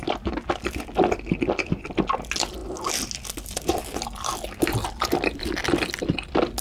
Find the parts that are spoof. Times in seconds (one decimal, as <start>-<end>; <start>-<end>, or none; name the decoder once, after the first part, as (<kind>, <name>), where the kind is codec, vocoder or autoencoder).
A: none